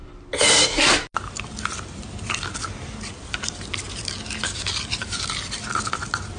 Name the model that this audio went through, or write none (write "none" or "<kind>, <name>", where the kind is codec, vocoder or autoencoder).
none